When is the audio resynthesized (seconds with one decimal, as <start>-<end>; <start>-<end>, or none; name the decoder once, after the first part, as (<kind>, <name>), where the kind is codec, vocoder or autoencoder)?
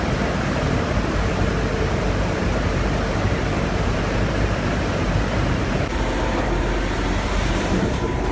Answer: 0.0-5.9 (vocoder, BigVGAN v2); 7.6-8.3